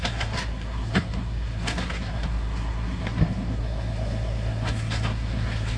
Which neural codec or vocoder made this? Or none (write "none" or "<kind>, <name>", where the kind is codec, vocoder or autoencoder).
codec, SNAC